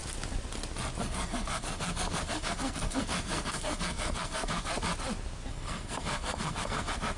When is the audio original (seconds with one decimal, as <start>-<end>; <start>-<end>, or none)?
0.0-1.0; 4.7-5.5